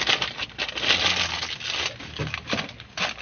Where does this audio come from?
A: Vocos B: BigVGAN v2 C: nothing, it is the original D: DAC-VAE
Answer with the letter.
C